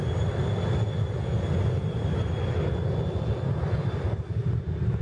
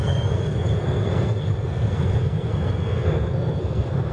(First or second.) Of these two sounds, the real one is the first